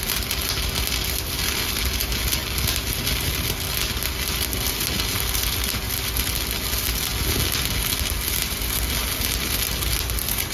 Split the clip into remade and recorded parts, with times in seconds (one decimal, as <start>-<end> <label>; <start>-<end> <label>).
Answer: 0.0-10.5 recorded